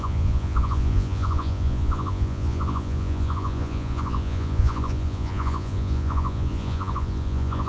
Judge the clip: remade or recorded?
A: remade